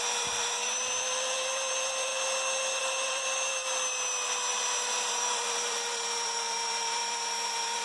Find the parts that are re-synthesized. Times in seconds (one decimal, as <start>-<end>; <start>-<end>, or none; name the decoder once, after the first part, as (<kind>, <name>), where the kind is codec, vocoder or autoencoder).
0.0-2.1 (vocoder, BigVGAN v2); 2.8-3.6; 4.5-7.8

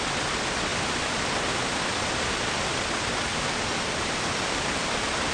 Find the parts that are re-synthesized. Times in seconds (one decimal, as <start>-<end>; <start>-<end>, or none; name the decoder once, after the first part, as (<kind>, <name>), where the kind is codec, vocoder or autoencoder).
0.7-2.3 (vocoder, BigVGAN v2); 3.3-4.8

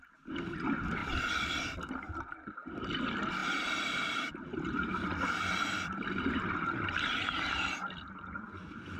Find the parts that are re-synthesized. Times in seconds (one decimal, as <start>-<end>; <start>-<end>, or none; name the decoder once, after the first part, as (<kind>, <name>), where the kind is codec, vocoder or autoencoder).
1.0-1.9 (vocoder, BigVGAN v2); 3.4-4.8

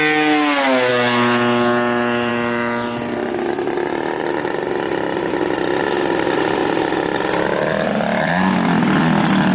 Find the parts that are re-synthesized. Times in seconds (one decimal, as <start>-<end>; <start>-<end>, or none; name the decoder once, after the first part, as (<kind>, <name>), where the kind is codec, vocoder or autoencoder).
none

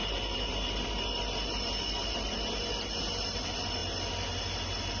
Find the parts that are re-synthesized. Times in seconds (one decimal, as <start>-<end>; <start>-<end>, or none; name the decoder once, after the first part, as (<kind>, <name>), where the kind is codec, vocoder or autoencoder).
none

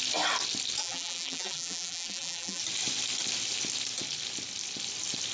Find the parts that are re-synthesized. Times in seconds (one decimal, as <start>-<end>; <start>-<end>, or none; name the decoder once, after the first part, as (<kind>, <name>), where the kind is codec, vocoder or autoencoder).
0.8-2.6 (vocoder, BigVGAN v2)

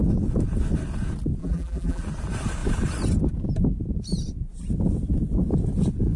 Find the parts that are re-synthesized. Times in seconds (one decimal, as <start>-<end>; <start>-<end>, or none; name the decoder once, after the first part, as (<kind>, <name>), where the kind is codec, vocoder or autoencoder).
1.4-2.0 (vocoder, BigVGAN v2)

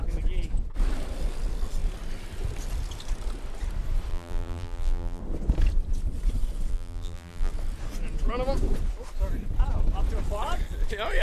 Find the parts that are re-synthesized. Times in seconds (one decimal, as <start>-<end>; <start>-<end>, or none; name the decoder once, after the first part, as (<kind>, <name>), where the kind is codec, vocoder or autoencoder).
4.1-5.2 (vocoder, BigVGAN v2); 6.7-7.5